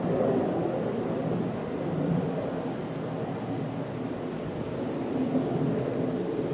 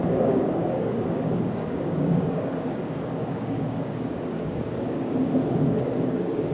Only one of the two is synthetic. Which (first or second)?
second